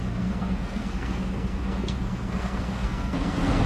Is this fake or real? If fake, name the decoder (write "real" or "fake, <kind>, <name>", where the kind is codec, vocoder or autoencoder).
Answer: fake, codec, SNAC